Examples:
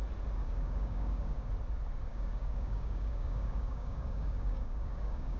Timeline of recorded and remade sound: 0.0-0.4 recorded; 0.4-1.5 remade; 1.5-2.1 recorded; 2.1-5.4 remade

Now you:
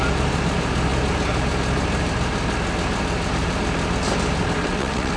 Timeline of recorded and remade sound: 0.0-4.6 recorded; 4.6-5.2 remade

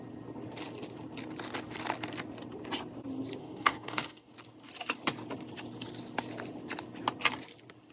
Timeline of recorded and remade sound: 0.0-3.4 recorded; 3.4-4.3 remade; 4.3-7.9 recorded

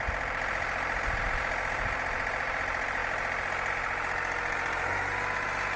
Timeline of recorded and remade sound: 0.0-5.8 recorded

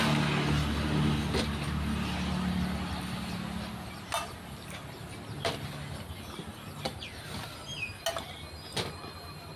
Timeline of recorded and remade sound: 0.0-9.6 recorded

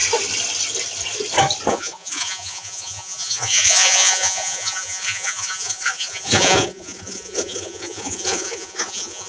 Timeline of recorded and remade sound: 0.0-1.7 recorded; 1.7-9.3 remade

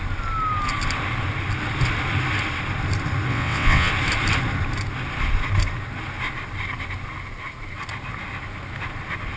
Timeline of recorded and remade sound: 0.0-3.3 recorded; 3.3-3.9 remade; 3.9-9.4 recorded